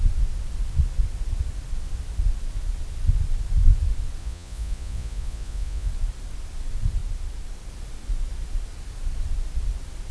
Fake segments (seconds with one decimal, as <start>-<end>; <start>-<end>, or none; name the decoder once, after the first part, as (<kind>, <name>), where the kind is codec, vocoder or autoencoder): 4.2-5.9 (vocoder, Vocos)